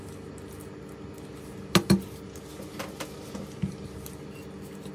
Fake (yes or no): no